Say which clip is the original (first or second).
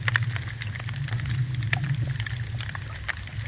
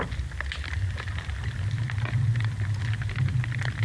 second